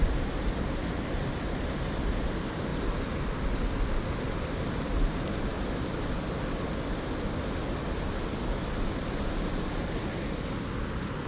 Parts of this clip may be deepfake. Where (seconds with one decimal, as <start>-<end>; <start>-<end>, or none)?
0.0-2.7; 3.4-5.5; 10.8-11.3